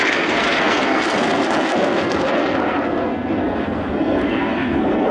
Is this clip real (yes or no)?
no